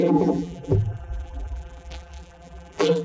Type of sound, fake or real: fake